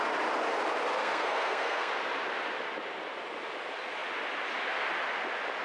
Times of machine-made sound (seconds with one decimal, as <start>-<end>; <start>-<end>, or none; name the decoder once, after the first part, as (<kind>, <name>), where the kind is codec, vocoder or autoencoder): 1.0-1.9 (codec, SNAC)